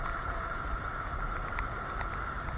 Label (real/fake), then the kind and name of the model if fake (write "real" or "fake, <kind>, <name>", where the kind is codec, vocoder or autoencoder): real